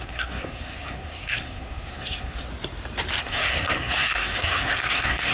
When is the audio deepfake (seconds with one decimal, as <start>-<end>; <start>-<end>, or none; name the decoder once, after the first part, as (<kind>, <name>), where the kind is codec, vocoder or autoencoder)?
0.0-2.5 (codec, SNAC); 3.2-5.3